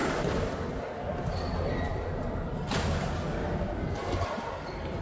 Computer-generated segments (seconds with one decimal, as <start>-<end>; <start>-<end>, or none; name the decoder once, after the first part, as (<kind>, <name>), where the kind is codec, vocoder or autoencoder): none